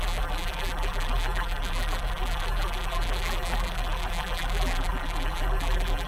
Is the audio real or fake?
fake